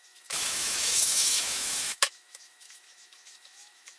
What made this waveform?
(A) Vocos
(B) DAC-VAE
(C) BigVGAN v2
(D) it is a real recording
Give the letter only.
B